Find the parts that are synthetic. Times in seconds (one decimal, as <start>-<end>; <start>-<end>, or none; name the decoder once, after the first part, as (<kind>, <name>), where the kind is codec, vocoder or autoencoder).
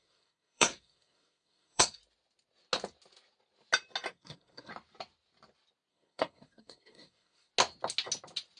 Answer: 0.0-2.0 (codec, SNAC); 4.1-4.7; 5.9-7.5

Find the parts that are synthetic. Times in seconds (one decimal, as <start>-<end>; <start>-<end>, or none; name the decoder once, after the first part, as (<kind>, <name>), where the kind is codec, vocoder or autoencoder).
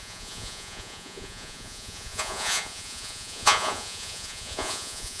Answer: 0.0-5.2 (vocoder, Vocos)